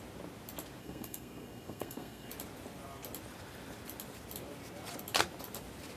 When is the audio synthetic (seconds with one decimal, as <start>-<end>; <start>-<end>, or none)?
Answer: 0.8-2.3